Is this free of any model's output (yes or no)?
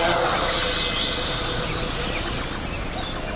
yes